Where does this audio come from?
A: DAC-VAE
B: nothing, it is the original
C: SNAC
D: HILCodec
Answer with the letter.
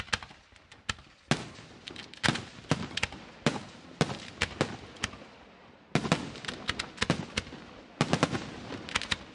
B